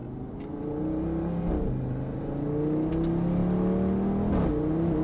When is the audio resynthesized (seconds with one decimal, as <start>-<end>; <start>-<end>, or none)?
none